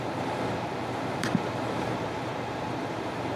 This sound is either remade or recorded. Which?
remade